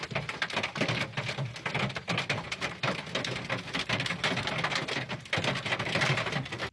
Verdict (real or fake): real